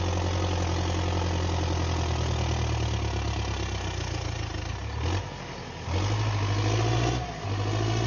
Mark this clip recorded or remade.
recorded